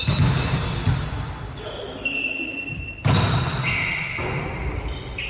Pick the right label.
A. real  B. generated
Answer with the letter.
A